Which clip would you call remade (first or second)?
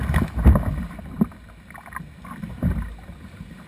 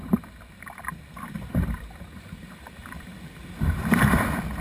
second